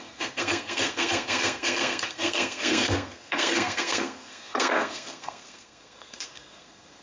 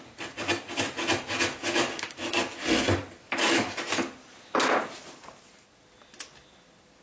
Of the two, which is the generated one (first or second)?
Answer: first